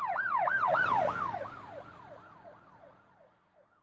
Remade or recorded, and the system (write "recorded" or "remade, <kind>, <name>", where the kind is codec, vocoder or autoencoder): remade, vocoder, Vocos